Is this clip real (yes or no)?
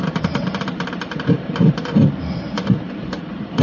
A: no